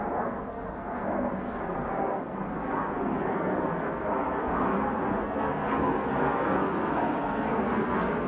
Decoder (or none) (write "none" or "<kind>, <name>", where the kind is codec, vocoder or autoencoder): codec, SNAC